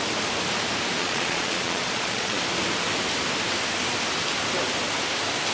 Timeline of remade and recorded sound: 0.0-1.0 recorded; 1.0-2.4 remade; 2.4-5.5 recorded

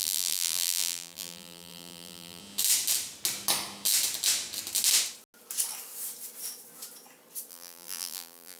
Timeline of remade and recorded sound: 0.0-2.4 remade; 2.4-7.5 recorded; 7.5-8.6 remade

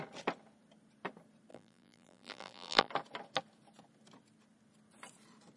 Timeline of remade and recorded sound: 0.0-1.5 recorded; 1.5-2.9 remade; 2.9-5.6 recorded

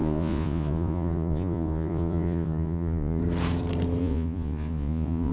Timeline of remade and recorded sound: 0.0-3.2 remade; 3.2-4.0 recorded; 4.0-5.3 remade

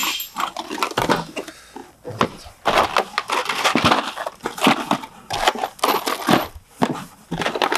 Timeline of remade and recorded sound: 0.0-7.8 recorded